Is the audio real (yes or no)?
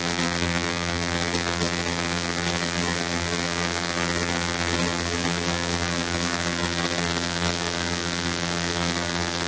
no